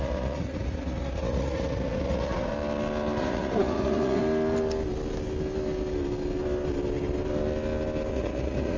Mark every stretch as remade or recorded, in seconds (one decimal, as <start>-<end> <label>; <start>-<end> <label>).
0.0-2.5 remade; 2.5-3.2 recorded; 3.2-4.2 remade; 4.2-8.1 recorded; 8.1-8.8 remade